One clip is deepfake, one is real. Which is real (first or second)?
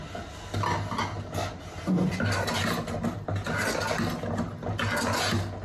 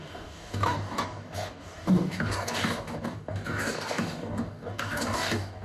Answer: first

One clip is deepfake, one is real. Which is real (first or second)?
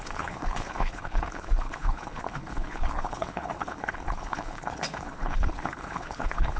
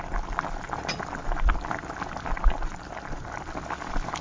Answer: second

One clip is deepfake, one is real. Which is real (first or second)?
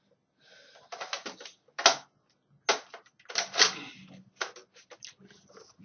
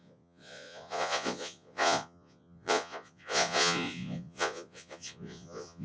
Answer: first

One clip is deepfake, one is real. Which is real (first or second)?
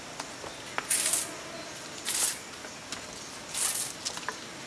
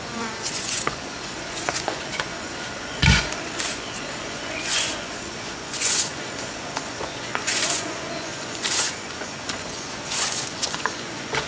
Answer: first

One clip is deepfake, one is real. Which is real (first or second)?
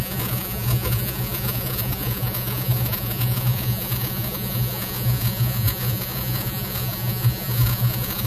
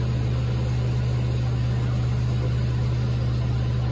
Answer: second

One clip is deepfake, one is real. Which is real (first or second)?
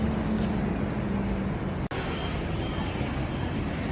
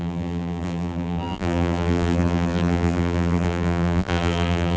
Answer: first